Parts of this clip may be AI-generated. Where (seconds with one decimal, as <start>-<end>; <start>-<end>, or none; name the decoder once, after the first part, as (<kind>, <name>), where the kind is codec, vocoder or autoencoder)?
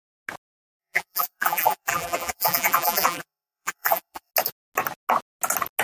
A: 0.8-4.3 (vocoder, BigVGAN v2)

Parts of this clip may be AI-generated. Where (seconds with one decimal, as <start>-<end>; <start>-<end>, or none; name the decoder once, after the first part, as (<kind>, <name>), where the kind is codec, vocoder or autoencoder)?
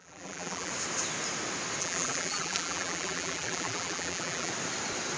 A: 0.0-0.7 (vocoder, BigVGAN v2); 1.8-4.5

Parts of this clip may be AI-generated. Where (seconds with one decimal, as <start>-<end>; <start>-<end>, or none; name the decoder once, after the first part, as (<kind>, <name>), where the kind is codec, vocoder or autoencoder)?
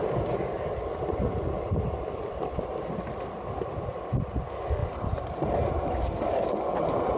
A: 4.8-5.5 (vocoder, BigVGAN v2)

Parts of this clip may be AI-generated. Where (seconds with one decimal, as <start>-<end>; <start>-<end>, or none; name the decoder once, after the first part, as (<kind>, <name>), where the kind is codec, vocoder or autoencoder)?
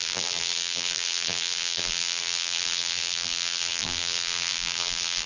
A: 0.0-5.3 (vocoder, BigVGAN v2)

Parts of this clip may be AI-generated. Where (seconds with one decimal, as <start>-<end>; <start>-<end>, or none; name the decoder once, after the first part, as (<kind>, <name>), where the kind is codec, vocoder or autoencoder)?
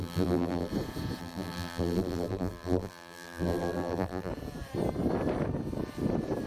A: 0.0-0.7 (vocoder, BigVGAN v2); 1.2-4.3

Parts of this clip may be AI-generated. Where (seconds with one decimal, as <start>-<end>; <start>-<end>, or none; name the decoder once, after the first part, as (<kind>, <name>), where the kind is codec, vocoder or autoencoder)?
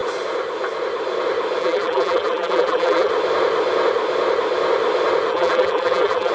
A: 1.6-3.1 (vocoder, BigVGAN v2); 5.3-6.3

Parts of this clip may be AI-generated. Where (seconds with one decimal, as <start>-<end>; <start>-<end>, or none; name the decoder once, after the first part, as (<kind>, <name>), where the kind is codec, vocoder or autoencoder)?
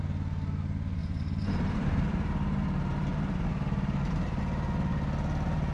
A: 1.0-4.4 (vocoder, BigVGAN v2)